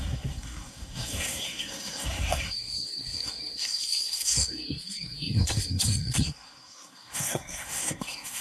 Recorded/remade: remade